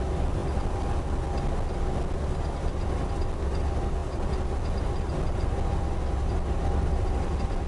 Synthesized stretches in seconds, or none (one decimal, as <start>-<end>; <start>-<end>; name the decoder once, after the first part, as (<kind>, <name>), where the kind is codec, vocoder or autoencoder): none